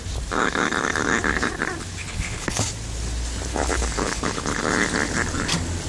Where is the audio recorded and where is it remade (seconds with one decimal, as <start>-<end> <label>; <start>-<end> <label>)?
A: 0.0-2.0 recorded; 2.0-2.7 remade; 2.7-3.5 recorded; 3.5-4.6 remade; 4.6-5.9 recorded